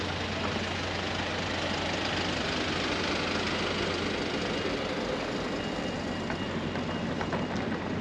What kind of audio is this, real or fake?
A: real